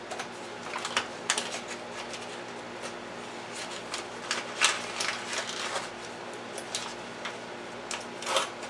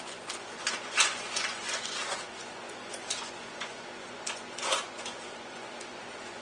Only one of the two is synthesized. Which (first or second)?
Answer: second